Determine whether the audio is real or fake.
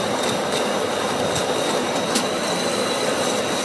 real